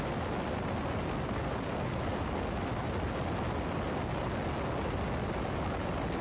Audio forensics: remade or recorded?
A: recorded